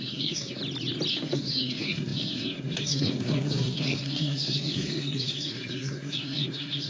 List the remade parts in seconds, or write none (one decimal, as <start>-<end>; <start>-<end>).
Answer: 0.0-0.6; 1.1-6.9